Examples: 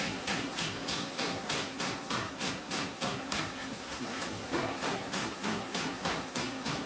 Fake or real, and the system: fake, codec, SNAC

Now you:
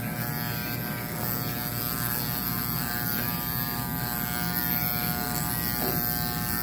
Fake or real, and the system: real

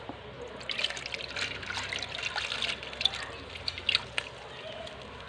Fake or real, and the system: real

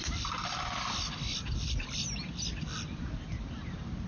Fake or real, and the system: real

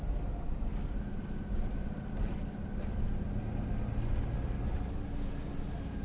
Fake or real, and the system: real